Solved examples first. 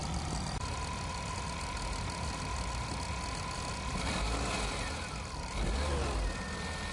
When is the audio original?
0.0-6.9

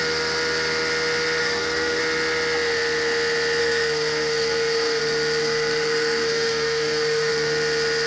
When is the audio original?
0.0-1.4; 2.0-3.6; 5.0-5.4; 7.3-8.1